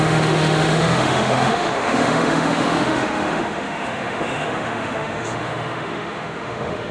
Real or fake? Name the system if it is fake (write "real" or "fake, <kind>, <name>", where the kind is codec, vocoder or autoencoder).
fake, autoencoder, DAC-VAE